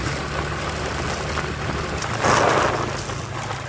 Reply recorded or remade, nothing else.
recorded